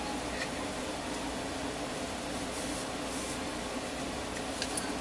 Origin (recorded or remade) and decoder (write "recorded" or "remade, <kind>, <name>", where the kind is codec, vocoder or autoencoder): recorded